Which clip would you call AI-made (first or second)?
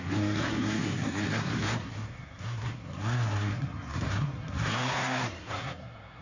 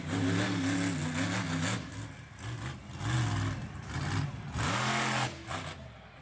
first